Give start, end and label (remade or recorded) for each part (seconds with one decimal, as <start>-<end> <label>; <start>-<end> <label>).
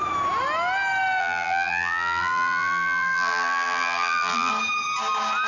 0.0-1.2 recorded; 1.2-4.5 remade; 4.5-5.5 recorded